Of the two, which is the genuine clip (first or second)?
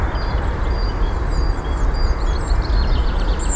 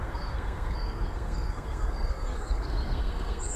first